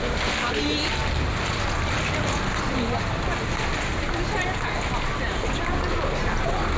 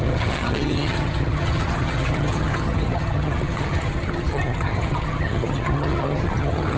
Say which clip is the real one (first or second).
first